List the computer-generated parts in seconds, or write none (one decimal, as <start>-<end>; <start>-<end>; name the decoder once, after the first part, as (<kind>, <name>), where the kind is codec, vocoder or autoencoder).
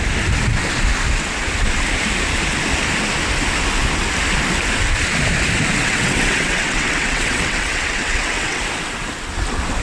5.8-8.6 (vocoder, WaveNeXt)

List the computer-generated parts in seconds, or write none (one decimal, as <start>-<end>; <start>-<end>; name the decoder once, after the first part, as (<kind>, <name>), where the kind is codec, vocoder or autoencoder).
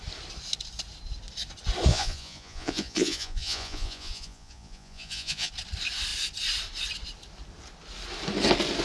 1.9-5.5 (vocoder, Vocos)